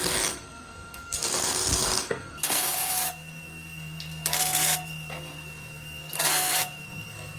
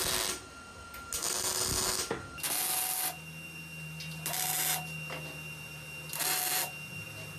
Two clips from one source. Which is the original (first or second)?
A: second